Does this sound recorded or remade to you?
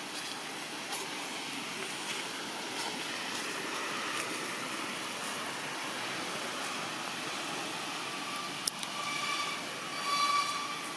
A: recorded